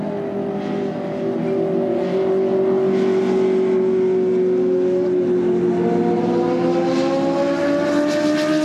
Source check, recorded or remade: recorded